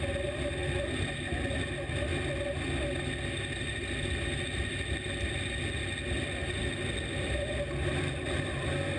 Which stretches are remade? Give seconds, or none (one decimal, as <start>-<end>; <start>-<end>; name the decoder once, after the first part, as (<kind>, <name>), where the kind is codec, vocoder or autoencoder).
none